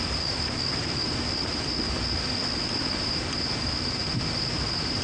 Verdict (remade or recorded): recorded